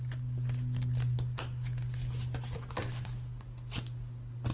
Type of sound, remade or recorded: recorded